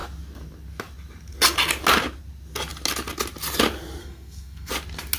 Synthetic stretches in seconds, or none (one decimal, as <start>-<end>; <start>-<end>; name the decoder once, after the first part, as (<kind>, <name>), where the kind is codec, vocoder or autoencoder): 4.0-4.7 (codec, SNAC)

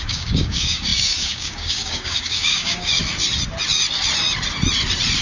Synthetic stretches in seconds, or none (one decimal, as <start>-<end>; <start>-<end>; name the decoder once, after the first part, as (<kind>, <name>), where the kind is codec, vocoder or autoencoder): 0.0-3.0 (codec, DAC)

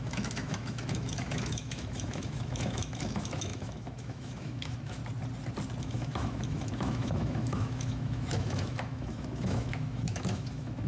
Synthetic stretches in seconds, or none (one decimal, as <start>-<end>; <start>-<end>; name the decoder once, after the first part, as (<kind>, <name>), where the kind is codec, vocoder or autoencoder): 0.0-5.0 (autoencoder, DAC-VAE); 5.8-10.9

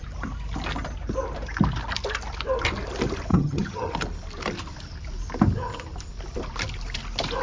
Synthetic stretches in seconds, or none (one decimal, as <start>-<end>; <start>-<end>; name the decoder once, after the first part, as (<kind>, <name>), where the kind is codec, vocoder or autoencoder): 3.3-3.9 (vocoder, HiFi-GAN)

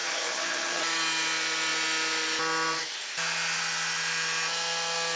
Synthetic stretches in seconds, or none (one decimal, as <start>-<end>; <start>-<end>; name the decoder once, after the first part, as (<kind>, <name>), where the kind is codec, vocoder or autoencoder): 0.0-0.8 (vocoder, HiFi-GAN)

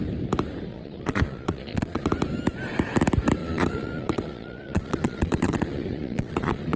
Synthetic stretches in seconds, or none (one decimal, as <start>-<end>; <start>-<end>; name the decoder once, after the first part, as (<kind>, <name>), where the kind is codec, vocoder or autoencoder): 0.7-2.1 (vocoder, Vocos); 3.4-6.8